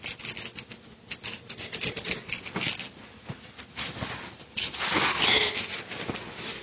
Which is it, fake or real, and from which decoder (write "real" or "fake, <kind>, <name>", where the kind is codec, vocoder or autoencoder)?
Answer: real